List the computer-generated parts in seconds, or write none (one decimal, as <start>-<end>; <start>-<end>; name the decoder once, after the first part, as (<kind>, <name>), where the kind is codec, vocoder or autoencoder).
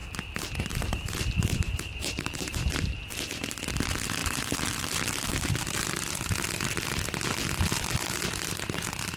1.5-3.0 (vocoder, BigVGAN v2)